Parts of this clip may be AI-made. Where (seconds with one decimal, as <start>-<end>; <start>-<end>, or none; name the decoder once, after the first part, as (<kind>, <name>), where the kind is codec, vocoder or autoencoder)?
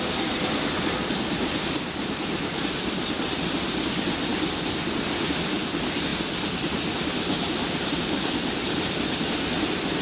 none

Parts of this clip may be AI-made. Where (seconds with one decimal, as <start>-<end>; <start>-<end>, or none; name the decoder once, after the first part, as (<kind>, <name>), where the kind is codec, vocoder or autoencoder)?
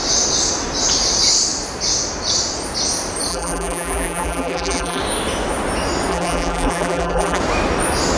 3.3-5.0 (vocoder, BigVGAN v2); 6.1-7.4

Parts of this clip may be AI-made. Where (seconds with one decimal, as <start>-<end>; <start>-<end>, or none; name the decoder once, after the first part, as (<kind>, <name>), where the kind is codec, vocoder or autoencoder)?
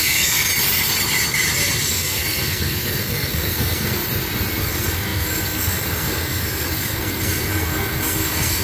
0.0-0.5 (codec, SNAC); 1.9-4.0; 4.6-8.6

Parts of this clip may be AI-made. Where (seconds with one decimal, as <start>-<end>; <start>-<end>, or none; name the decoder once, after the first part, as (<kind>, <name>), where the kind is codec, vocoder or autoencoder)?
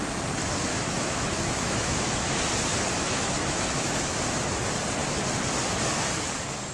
0.7-2.4 (autoencoder, DAC-VAE); 3.0-4.2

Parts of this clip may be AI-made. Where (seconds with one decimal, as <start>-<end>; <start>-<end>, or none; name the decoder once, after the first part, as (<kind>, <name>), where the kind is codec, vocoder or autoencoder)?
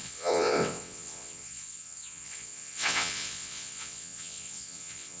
0.0-5.2 (vocoder, WaveNeXt)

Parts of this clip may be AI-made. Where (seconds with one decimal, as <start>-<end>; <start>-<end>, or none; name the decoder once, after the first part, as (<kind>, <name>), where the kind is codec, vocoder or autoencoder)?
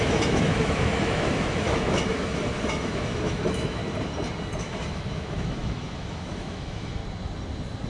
0.0-3.8 (autoencoder, DAC-VAE); 4.6-7.0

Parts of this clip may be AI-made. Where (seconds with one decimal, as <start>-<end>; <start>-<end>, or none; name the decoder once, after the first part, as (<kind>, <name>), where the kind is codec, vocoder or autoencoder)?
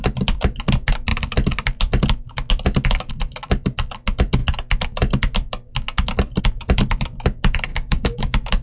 7.7-8.2 (codec, DAC)